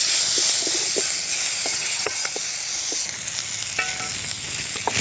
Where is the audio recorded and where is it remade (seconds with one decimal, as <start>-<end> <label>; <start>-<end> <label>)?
0.0-1.7 recorded; 1.7-2.3 remade; 2.3-5.0 recorded